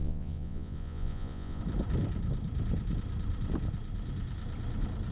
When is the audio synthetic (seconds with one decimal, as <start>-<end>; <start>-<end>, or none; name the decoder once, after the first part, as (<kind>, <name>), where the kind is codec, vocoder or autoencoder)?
0.0-1.6 (vocoder, Vocos)